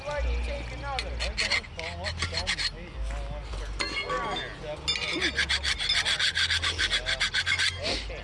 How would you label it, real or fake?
real